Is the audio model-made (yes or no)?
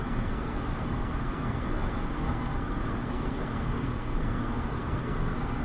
yes